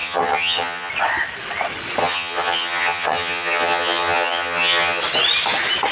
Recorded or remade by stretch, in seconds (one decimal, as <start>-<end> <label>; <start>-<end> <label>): 0.0-0.9 remade; 0.9-2.0 recorded; 2.0-5.0 remade; 5.0-5.9 recorded

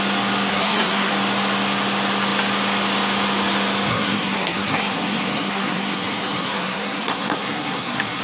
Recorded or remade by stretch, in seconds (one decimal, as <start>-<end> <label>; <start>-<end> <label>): 0.0-0.5 recorded; 0.5-1.1 remade; 1.1-3.9 recorded; 3.9-8.2 remade

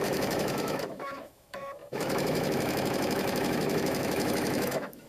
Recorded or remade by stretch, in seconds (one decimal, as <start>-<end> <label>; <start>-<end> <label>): 0.0-5.1 remade

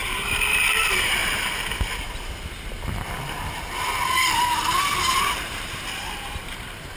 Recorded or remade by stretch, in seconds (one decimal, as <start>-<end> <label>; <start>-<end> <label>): 0.0-0.5 recorded; 0.5-1.2 remade; 1.2-5.0 recorded; 5.0-7.0 remade

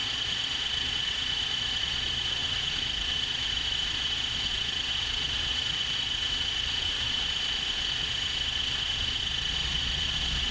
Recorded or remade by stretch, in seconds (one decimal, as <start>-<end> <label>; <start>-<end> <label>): 0.0-10.5 remade

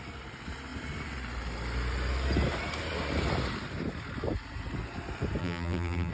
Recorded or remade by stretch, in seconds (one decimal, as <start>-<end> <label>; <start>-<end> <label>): 0.0-5.4 recorded; 5.4-6.1 remade

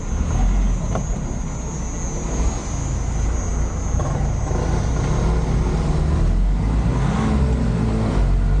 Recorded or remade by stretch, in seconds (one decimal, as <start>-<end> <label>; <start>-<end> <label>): 0.0-8.6 recorded

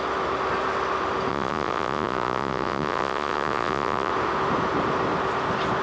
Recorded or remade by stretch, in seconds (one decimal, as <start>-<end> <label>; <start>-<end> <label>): 0.0-1.3 recorded; 1.3-4.1 remade; 4.1-5.8 recorded